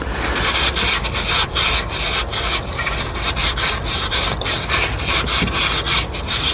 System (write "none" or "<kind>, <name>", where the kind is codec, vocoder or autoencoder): none